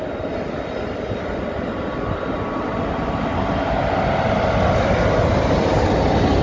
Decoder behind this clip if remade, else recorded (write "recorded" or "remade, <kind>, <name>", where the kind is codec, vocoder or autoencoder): recorded